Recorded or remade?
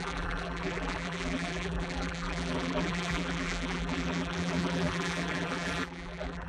remade